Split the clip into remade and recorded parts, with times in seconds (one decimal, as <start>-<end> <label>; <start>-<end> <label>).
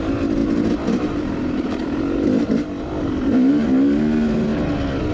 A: 0.0-5.1 recorded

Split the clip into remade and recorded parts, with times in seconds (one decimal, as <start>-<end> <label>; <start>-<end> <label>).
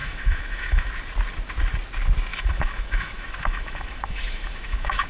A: 0.0-0.9 remade; 0.9-2.3 recorded; 2.3-5.1 remade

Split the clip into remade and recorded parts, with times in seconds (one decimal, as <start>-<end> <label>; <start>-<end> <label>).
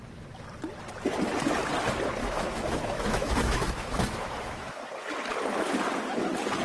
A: 0.0-2.2 recorded; 2.2-4.8 remade; 4.8-6.6 recorded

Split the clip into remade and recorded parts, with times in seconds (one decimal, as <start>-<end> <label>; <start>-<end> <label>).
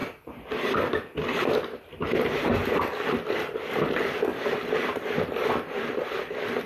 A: 0.0-6.7 recorded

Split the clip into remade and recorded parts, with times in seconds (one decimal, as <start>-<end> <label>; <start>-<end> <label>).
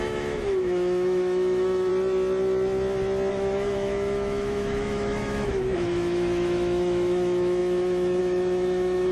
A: 0.0-1.9 remade; 1.9-3.3 recorded; 3.3-9.1 remade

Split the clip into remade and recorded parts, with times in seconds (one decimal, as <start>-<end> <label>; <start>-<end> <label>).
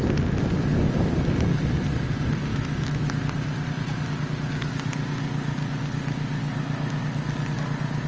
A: 0.0-2.5 recorded; 2.5-3.2 remade; 3.2-8.1 recorded